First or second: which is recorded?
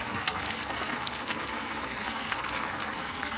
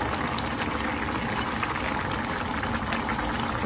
second